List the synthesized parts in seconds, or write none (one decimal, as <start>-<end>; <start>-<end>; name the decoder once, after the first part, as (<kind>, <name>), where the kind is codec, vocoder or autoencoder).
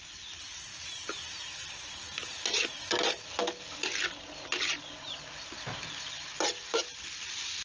none